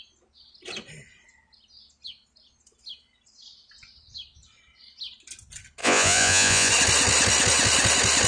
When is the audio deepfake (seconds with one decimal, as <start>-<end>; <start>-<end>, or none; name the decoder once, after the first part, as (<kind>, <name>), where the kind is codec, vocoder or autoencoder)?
5.8-6.7 (vocoder, Vocos)